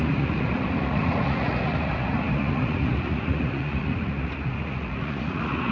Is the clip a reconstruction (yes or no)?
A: yes